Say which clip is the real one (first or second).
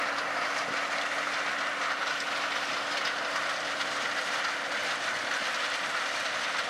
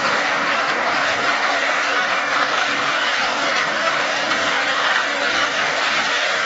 first